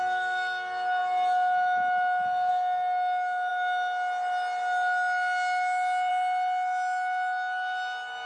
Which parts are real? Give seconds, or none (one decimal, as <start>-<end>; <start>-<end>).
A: 0.0-8.3